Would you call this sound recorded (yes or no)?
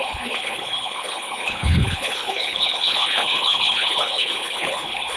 no